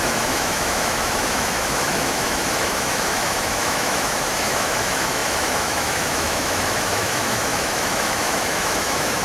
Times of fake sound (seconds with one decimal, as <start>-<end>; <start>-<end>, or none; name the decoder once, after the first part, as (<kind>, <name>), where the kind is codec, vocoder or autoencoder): 0.0-9.2 (autoencoder, DAC-VAE)

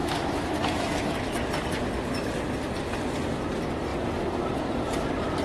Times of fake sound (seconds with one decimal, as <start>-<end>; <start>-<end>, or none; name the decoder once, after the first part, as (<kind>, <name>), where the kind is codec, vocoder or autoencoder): 0.0-1.1 (autoencoder, DAC-VAE)

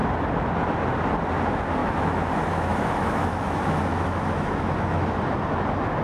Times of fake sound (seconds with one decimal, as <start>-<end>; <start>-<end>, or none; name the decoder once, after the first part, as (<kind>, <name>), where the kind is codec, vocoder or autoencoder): 1.8-5.2 (autoencoder, DAC-VAE)

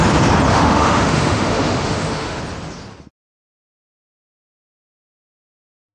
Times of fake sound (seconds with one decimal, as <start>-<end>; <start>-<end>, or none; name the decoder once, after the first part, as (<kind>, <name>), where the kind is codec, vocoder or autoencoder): 0.5-2.4 (autoencoder, DAC-VAE)